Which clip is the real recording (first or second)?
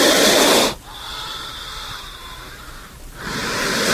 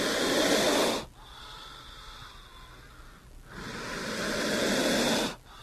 second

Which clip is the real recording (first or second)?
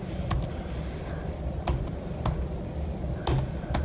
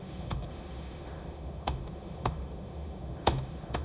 first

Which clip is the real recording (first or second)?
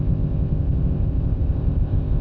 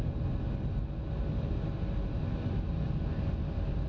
second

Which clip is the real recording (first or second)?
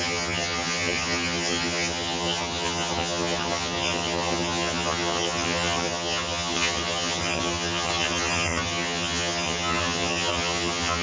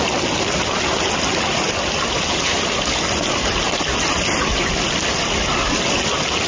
second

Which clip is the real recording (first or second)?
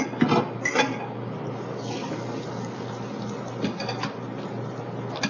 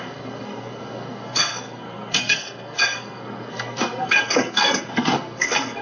first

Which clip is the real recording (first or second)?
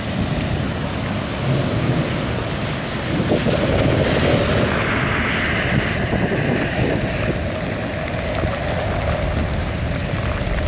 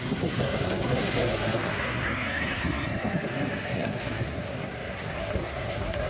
first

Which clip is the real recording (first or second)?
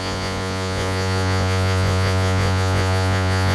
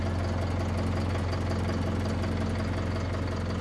second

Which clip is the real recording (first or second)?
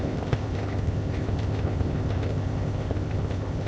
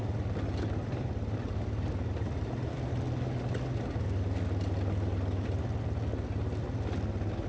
second